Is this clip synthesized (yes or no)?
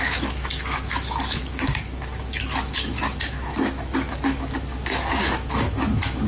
yes